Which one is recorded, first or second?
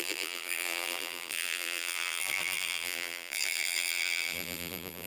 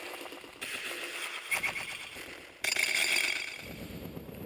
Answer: second